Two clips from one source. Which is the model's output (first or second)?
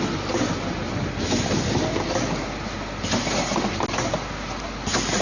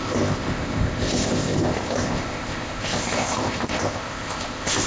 second